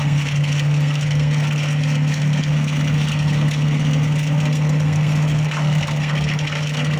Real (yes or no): no